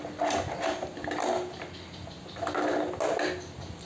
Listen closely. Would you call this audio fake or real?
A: real